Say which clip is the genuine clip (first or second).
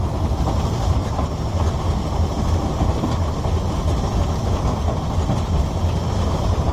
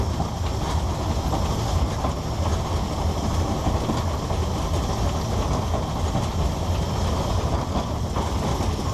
second